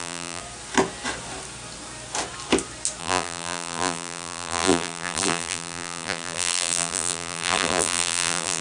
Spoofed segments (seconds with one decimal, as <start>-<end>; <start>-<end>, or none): 0.0-0.4; 3.0-8.6